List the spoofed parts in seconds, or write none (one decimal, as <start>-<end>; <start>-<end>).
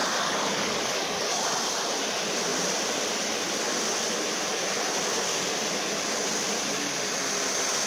0.0-1.4